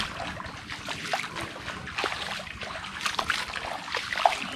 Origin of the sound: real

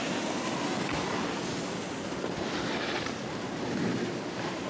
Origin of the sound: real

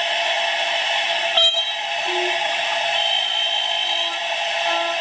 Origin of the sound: real